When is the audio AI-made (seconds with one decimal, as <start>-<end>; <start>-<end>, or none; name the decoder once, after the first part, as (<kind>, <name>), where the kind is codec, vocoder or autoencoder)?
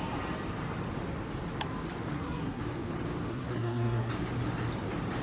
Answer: 2.1-2.6 (codec, SNAC); 3.3-4.1